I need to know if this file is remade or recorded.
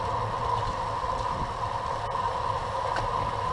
recorded